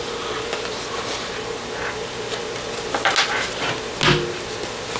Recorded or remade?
recorded